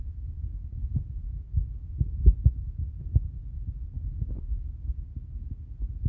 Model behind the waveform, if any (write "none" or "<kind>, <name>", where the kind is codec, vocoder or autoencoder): none